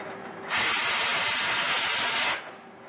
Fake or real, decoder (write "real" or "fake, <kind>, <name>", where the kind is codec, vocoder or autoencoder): real